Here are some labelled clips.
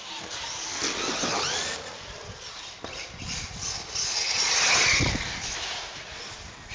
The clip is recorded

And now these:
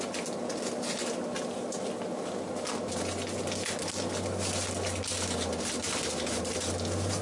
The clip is recorded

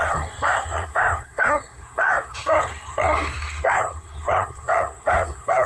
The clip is remade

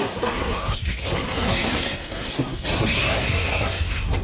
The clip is remade